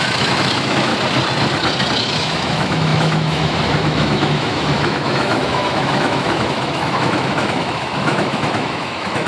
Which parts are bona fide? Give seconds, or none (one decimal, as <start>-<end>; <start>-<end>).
0.9-2.0